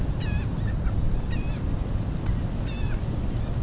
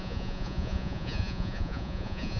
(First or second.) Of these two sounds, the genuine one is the first